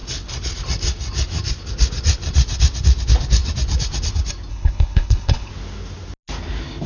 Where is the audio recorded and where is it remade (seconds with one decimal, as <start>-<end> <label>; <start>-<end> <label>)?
0.0-4.5 recorded; 4.5-5.5 remade; 5.5-6.9 recorded